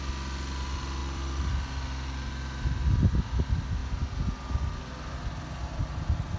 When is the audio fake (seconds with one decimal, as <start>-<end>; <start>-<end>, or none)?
1.0-1.5